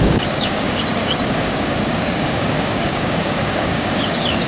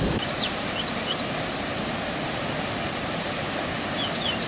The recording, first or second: second